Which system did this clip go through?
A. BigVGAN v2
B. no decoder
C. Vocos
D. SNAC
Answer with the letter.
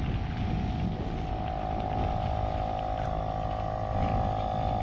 B